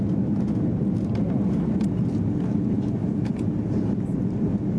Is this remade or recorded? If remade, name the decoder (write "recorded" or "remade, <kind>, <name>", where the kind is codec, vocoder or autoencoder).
recorded